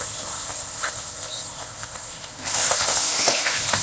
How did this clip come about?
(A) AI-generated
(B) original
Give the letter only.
A